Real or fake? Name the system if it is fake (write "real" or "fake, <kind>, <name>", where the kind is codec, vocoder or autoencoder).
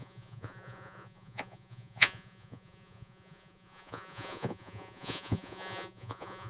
fake, vocoder, Vocos